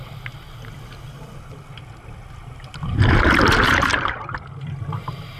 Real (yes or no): yes